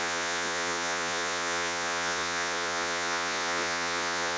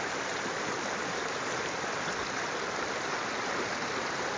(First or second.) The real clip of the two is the second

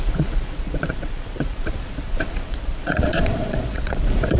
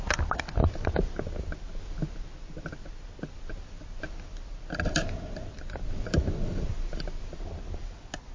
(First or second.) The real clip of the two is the second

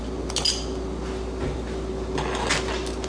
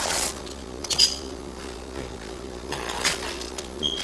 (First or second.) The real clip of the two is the first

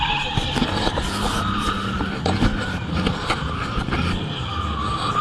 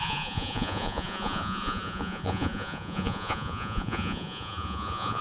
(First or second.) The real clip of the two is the first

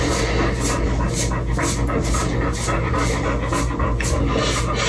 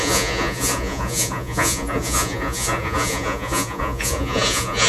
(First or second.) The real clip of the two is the first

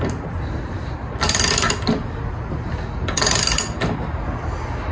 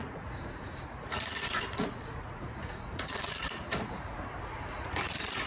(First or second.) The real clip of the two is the first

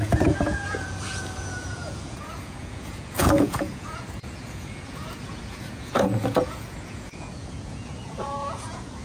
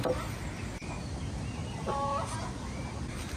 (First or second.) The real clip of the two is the second